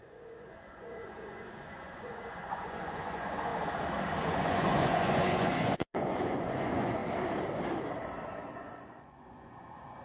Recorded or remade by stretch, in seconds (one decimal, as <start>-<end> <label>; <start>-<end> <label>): 0.0-3.5 remade; 3.5-4.2 recorded; 4.2-7.0 remade; 7.0-8.5 recorded; 8.5-10.0 remade